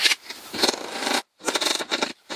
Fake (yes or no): yes